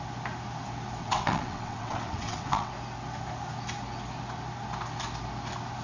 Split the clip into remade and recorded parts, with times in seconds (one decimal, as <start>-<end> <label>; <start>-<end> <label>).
0.0-1.0 recorded; 1.0-2.7 remade; 2.7-5.8 recorded